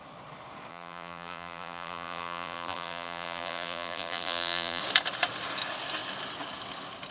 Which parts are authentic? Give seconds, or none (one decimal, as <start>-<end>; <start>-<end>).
0.0-0.7; 4.8-7.1